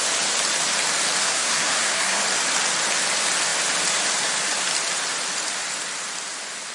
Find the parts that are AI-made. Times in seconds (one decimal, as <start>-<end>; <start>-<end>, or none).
1.2-2.2